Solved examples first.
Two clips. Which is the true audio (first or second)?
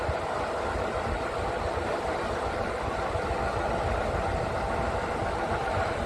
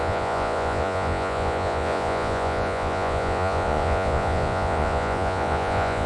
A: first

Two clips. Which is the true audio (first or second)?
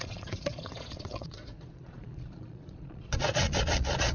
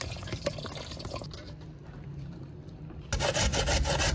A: second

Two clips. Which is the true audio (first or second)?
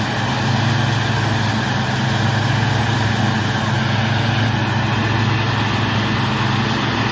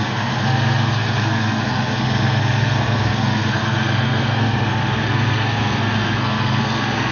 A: first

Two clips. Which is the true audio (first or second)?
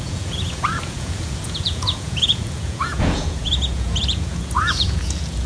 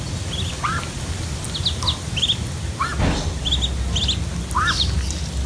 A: second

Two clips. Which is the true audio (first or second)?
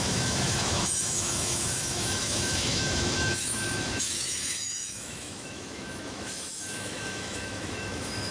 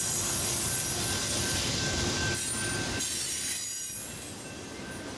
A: second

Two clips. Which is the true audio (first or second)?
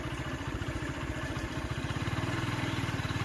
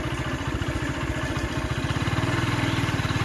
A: second